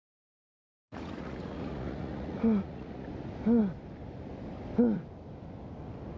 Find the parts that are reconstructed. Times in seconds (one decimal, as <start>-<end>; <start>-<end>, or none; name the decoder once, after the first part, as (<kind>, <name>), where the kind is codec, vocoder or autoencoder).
0.7-3.1 (vocoder, Vocos)